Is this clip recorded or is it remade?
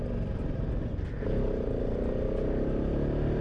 recorded